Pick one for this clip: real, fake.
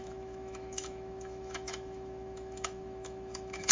fake